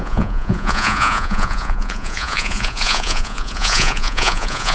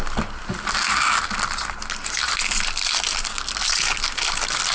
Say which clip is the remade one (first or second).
first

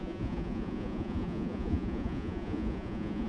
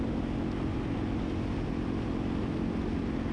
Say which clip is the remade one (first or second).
first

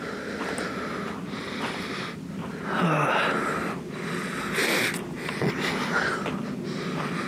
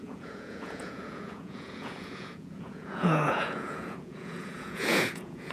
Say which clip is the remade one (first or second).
second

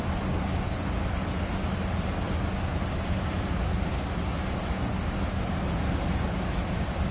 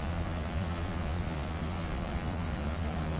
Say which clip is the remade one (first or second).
second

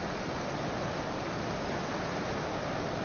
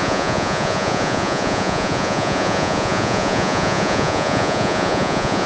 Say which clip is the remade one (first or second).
second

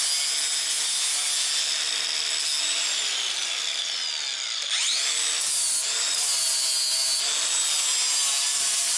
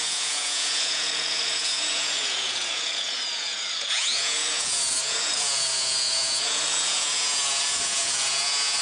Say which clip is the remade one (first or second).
second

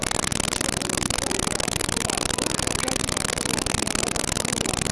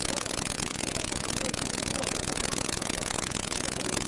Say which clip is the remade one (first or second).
second